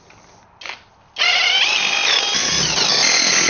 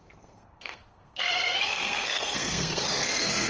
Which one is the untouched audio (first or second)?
first